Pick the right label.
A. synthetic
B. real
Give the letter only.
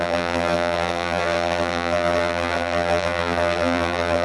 A